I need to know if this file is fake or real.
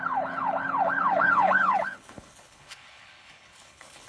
fake